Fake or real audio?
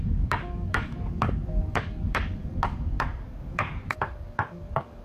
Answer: fake